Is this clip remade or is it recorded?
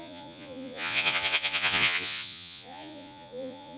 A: remade